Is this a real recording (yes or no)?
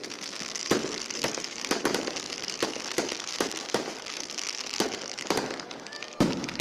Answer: no